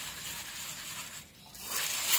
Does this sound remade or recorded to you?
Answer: recorded